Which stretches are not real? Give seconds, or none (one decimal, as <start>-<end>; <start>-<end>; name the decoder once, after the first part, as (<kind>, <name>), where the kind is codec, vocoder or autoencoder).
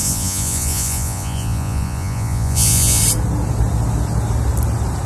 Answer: 0.0-3.0 (vocoder, Vocos)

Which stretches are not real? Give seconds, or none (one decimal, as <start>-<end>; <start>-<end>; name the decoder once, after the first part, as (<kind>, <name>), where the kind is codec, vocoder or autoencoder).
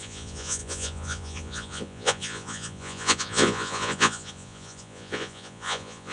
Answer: 0.0-6.1 (vocoder, Vocos)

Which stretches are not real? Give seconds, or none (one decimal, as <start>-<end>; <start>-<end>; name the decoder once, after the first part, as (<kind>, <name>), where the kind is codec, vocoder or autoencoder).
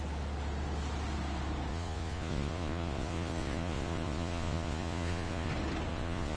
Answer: 1.7-5.5 (vocoder, Vocos); 5.9-6.4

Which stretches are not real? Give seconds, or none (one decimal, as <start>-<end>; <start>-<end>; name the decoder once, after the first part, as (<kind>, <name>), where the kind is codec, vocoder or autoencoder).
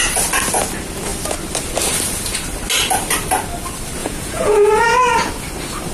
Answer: 4.0-4.7 (vocoder, Vocos)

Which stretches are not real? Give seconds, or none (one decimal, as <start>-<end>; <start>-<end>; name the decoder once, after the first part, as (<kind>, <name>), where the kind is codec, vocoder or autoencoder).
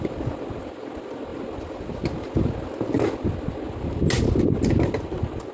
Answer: none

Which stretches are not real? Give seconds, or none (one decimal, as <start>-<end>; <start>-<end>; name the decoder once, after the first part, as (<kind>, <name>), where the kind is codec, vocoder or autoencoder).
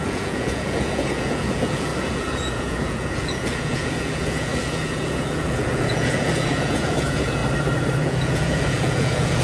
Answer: 0.0-7.4 (vocoder, Vocos); 8.0-9.4